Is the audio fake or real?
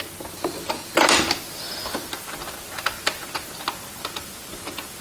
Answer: real